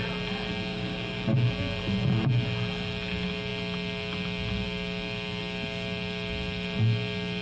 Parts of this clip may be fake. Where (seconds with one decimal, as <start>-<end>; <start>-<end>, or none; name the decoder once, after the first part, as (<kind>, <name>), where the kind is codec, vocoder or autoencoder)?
0.7-1.5 (codec, DAC)